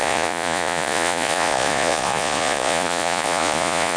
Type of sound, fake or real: fake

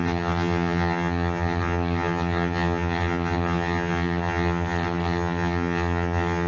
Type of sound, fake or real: fake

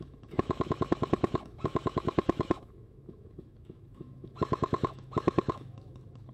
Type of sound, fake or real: fake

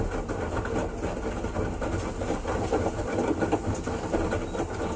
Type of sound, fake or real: real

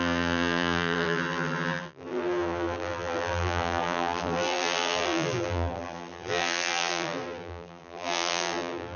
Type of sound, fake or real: fake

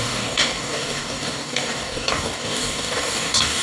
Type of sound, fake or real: fake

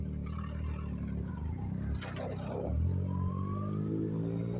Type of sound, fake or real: real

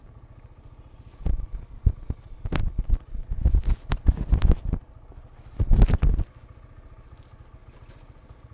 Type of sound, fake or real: real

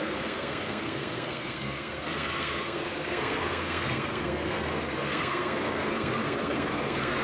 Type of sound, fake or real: fake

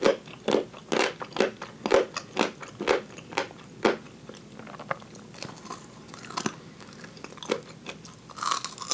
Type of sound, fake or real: real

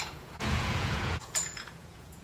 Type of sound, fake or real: fake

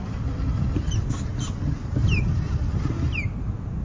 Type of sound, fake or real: real